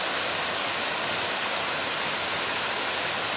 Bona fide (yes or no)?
yes